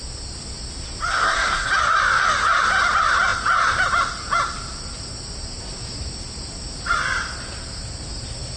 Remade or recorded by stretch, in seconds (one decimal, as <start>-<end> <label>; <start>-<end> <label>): 0.0-1.1 recorded; 1.1-1.7 remade; 1.7-8.6 recorded